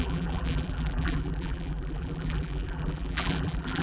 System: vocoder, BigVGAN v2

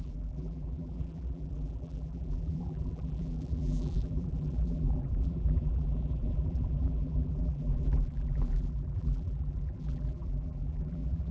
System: vocoder, BigVGAN v2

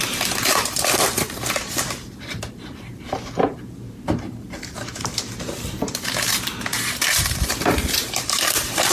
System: vocoder, BigVGAN v2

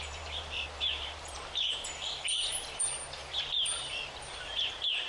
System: vocoder, BigVGAN v2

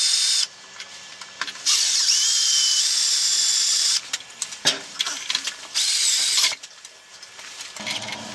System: vocoder, BigVGAN v2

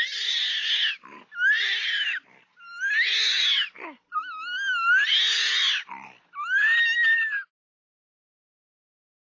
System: none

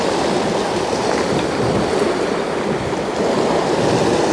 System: none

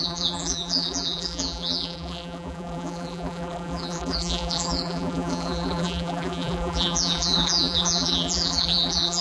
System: vocoder, BigVGAN v2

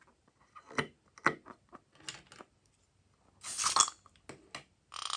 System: none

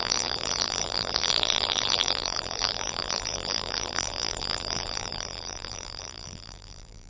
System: vocoder, BigVGAN v2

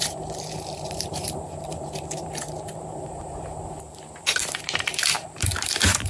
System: vocoder, BigVGAN v2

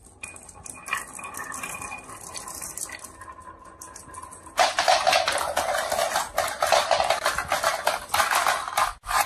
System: none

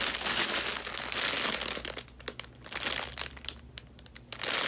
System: none